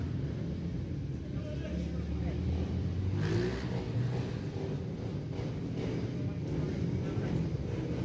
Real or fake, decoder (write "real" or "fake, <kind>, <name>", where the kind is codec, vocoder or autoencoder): real